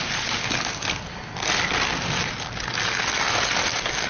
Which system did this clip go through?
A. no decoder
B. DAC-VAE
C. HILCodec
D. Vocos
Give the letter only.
A